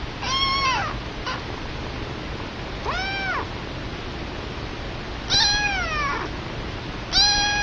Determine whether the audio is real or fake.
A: real